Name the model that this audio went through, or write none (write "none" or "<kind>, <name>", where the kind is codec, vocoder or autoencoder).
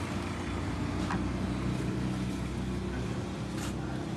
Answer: none